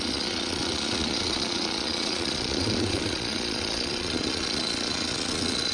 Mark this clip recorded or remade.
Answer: remade